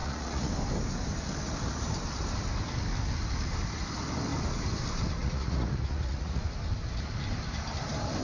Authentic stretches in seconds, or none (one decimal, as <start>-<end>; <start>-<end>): 0.5-5.2; 6.4-8.2